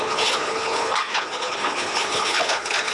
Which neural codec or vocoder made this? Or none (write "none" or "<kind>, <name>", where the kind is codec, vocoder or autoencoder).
codec, HILCodec